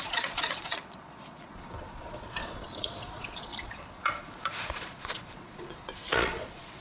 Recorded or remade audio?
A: remade